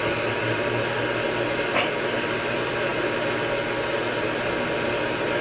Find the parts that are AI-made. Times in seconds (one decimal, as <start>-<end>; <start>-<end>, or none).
none